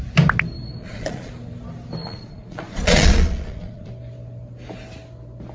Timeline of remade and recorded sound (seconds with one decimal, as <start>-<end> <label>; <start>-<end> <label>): 0.0-0.8 recorded; 0.8-1.3 remade; 1.3-2.0 recorded; 2.0-3.9 remade; 3.9-5.5 recorded